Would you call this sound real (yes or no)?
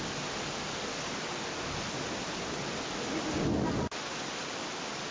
yes